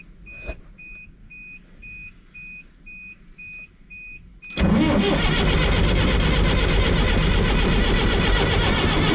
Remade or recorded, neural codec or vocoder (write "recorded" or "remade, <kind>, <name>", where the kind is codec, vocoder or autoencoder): recorded